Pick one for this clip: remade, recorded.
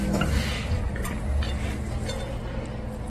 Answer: recorded